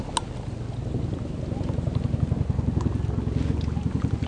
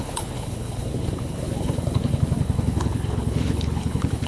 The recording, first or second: first